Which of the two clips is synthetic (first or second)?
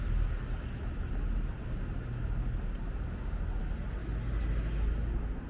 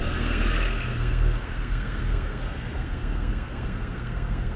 second